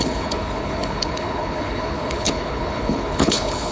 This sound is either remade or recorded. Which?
remade